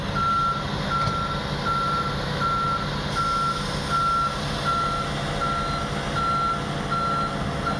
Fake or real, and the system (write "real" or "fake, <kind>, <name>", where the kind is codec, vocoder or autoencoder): real